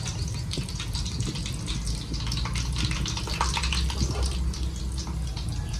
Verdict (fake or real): real